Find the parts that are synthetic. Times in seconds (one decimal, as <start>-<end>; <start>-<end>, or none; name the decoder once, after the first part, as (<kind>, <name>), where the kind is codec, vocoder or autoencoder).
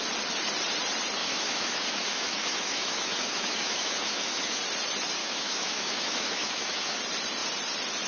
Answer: 1.2-4.6 (autoencoder, DAC-VAE); 5.2-7.0